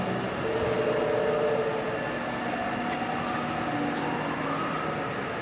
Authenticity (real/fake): real